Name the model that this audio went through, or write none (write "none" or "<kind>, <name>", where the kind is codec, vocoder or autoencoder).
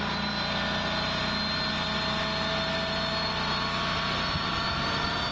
none